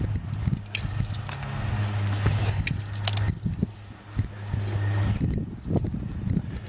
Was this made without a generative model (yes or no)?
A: yes